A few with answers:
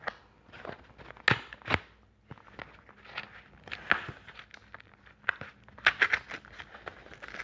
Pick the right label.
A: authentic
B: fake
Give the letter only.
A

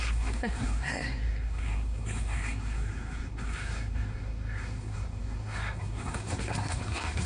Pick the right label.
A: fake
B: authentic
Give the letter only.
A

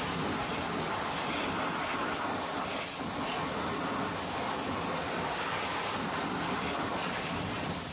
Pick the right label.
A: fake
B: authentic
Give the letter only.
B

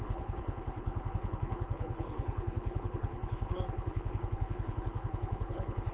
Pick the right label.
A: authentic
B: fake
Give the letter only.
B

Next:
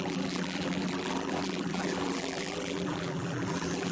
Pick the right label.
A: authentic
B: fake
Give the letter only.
B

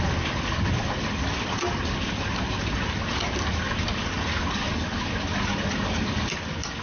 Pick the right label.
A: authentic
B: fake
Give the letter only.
A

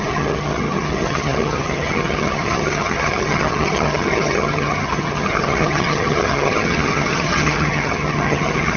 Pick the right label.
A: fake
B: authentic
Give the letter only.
A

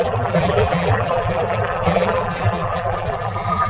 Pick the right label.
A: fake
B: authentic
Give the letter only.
A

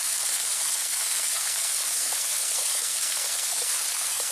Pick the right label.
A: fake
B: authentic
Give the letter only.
A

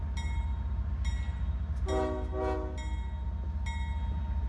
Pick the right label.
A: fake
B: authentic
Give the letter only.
B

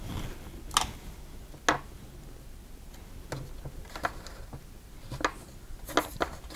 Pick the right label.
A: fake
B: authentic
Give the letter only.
B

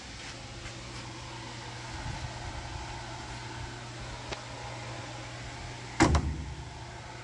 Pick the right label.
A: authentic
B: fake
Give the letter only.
A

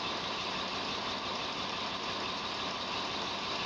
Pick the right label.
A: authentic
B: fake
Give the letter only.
A